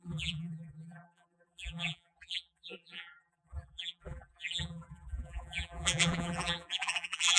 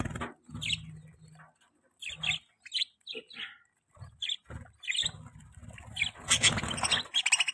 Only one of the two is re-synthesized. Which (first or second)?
first